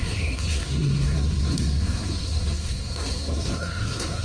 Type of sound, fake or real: fake